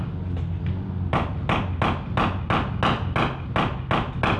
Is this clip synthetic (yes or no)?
no